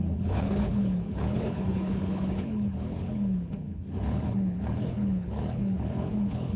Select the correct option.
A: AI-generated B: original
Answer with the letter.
A